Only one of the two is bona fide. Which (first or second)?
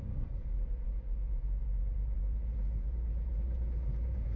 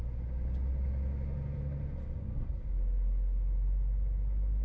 second